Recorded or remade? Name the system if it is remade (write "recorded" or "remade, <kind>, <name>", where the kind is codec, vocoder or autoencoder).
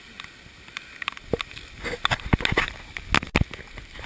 recorded